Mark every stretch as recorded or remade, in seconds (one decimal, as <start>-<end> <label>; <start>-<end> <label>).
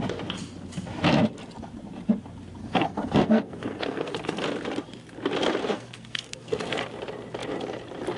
0.0-2.6 recorded; 2.6-4.4 remade; 4.4-5.6 recorded; 5.6-6.8 remade; 6.8-8.2 recorded